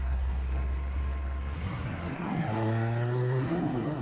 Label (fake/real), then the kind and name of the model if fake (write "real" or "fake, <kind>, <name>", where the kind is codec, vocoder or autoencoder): fake, codec, SNAC